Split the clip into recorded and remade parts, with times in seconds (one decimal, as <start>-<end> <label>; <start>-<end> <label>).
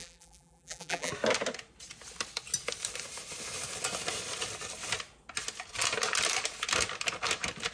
0.0-1.1 remade; 1.1-7.7 recorded